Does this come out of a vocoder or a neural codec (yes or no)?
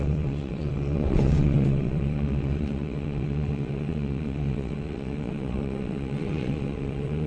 yes